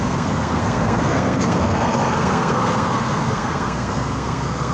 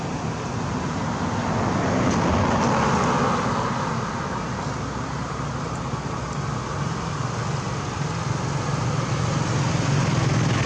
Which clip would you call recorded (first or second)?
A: second